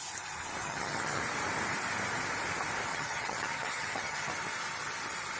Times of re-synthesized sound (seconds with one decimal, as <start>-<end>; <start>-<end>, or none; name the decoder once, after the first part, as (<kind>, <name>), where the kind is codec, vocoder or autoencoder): 0.6-1.2 (vocoder, HiFi-GAN); 2.9-4.3